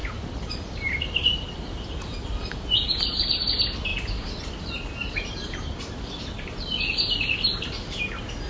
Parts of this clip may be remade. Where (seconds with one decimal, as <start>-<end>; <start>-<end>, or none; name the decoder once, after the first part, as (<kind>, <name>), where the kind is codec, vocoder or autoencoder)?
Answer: 0.0-3.1 (vocoder, BigVGAN v2); 3.9-6.8